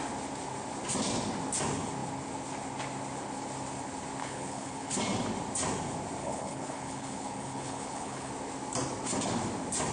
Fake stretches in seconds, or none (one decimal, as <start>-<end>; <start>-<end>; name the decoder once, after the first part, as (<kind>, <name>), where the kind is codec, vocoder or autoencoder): 4.2-4.9 (codec, HILCodec); 6.2-8.3